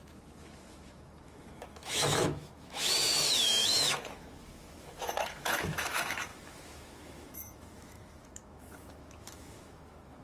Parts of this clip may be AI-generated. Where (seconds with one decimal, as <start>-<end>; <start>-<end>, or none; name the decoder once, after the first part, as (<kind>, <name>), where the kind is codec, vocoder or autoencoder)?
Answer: 0.0-10.2 (autoencoder, DAC-VAE)